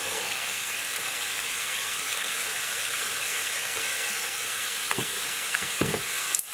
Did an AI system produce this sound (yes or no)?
yes